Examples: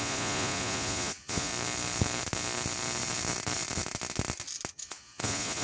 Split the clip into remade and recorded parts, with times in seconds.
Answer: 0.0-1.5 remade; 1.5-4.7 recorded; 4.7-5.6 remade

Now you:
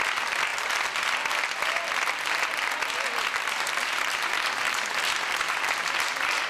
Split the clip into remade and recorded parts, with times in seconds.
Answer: 0.0-6.5 recorded

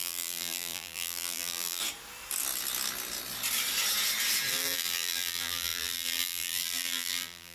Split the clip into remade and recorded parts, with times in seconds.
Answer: 0.0-1.8 remade; 1.8-4.5 recorded; 4.5-7.5 remade

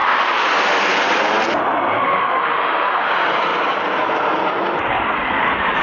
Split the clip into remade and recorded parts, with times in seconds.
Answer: 0.0-2.0 recorded; 2.0-3.1 remade; 3.1-5.8 recorded